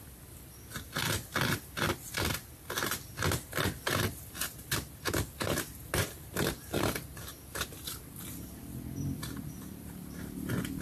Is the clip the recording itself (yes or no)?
no